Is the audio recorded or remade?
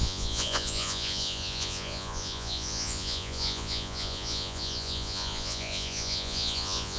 remade